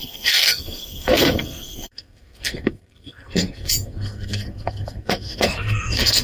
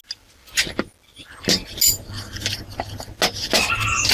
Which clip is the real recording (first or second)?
second